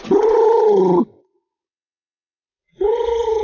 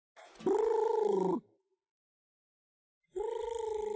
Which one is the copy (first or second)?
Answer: first